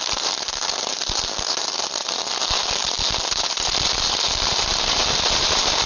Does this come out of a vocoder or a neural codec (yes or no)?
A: yes